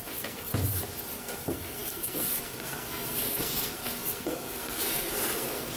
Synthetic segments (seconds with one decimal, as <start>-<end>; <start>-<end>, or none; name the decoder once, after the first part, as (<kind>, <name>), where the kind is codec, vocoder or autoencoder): 0.0-0.5 (codec, SNAC); 1.1-5.8